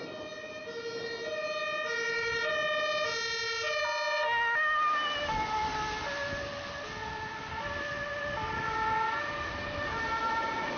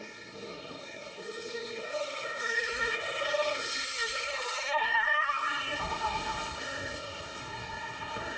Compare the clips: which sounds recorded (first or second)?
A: first